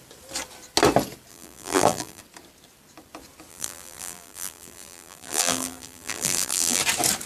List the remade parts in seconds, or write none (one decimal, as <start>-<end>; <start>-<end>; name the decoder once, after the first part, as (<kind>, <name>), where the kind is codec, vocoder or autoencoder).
1.3-2.2 (vocoder, BigVGAN v2); 3.5-6.8